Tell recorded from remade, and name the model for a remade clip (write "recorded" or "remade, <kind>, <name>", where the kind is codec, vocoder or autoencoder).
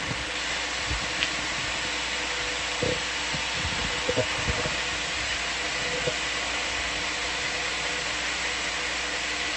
recorded